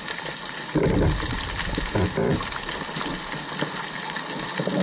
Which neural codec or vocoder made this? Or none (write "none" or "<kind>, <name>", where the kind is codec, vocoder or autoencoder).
none